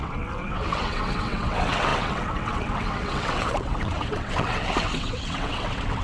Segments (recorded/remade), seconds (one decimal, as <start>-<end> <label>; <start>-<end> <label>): 0.0-6.0 remade